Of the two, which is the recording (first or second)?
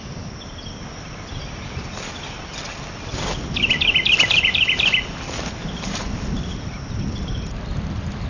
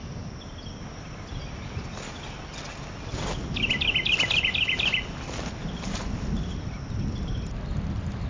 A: second